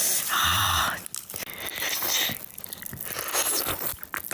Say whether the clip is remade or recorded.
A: recorded